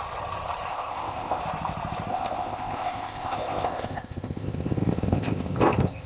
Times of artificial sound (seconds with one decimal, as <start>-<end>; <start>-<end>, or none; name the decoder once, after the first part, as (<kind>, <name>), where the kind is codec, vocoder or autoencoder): 0.7-1.4 (codec, ZipCodec); 2.1-6.1